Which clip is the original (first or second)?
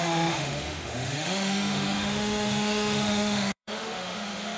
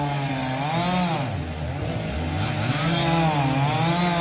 second